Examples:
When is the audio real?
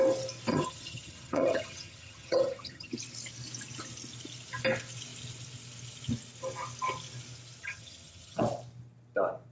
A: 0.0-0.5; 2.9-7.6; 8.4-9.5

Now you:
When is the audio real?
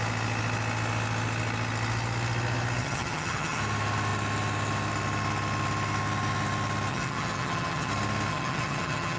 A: 0.0-2.8; 3.6-6.9; 7.9-8.3